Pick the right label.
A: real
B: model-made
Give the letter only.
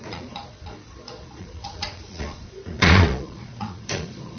B